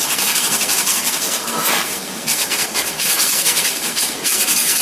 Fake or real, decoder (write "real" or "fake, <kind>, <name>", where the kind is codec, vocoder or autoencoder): fake, codec, SNAC